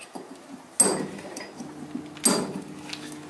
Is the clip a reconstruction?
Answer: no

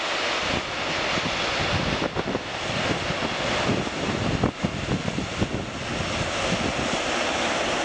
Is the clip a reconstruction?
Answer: no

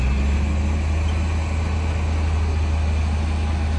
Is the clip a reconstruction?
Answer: no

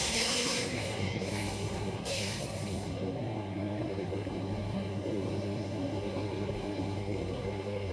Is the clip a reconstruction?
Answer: yes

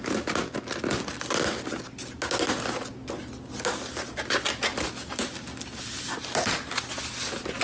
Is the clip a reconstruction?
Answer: no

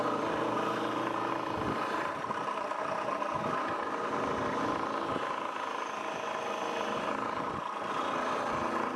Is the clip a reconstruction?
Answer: no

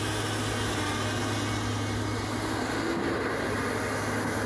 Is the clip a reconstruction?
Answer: no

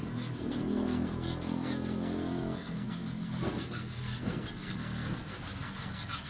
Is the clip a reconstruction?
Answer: yes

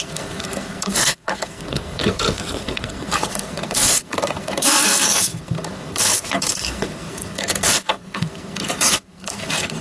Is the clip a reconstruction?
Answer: yes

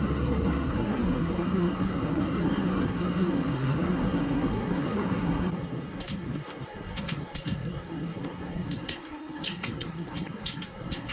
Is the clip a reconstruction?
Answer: yes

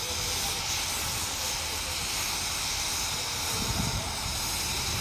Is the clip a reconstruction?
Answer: no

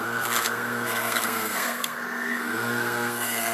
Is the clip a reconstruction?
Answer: yes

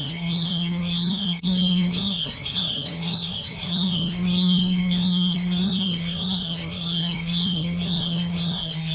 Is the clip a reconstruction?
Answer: yes